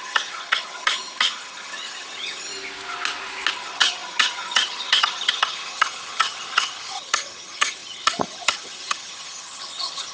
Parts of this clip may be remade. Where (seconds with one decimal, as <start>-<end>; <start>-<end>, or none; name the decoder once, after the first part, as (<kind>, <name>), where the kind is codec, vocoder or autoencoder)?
0.0-2.5 (vocoder, HiFi-GAN); 3.5-10.1